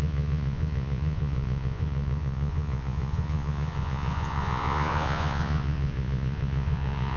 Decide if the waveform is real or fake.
fake